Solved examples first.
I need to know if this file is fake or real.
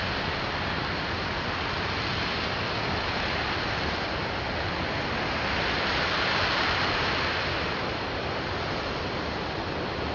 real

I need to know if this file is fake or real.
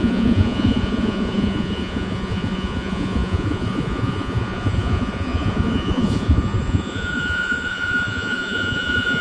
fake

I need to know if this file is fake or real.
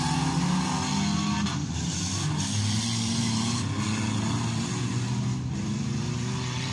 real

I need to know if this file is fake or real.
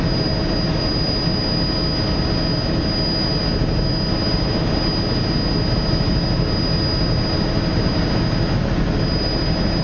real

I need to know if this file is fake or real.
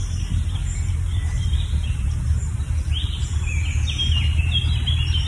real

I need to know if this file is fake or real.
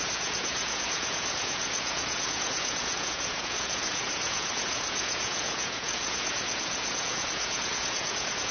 fake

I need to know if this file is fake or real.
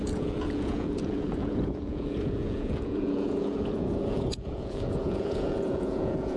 fake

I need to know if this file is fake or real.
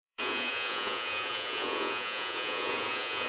fake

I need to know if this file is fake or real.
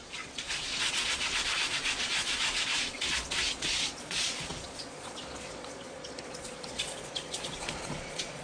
fake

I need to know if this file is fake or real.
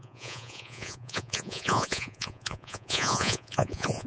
fake